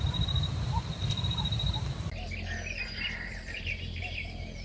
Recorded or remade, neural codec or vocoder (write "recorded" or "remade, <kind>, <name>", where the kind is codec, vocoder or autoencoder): recorded